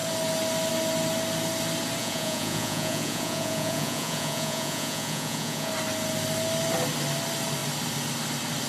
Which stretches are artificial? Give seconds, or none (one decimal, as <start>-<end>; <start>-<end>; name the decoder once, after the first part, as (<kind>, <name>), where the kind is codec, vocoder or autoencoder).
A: 2.0-5.7 (vocoder, Vocos)